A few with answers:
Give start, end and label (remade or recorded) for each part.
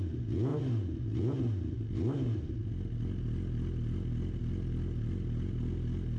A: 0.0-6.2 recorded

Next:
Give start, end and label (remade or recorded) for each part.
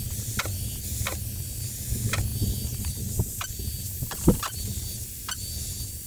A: 0.0-6.1 recorded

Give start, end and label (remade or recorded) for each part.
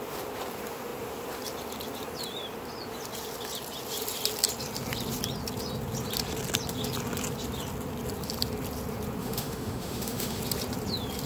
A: 0.0-9.2 recorded; 9.2-10.4 remade; 10.4-11.3 recorded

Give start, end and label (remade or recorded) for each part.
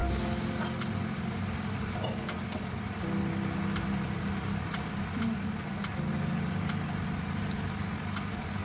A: 0.0-8.6 recorded